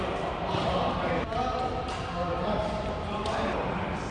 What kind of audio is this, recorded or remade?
recorded